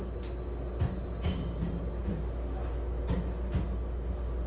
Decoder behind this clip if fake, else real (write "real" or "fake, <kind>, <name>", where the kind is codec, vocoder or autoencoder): real